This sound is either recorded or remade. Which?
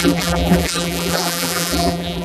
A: remade